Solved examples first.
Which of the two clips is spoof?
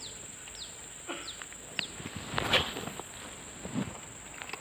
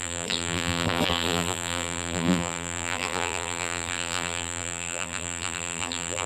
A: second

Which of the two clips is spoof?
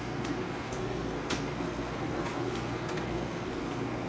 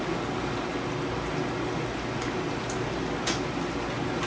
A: first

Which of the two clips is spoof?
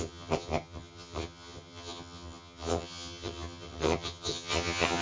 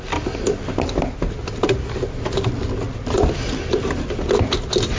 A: first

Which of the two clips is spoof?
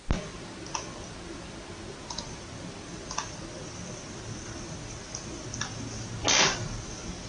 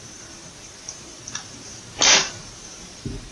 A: second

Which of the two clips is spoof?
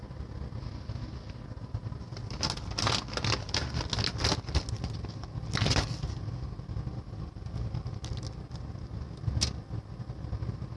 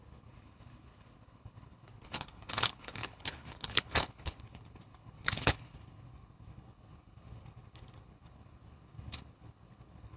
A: second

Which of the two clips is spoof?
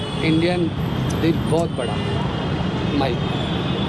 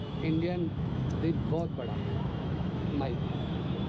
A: second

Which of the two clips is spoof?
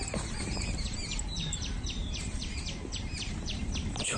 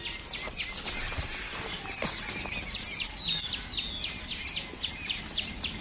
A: first